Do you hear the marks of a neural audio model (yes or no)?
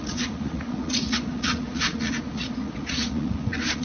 yes